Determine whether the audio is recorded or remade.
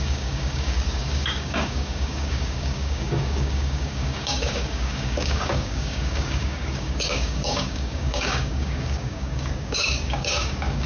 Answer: remade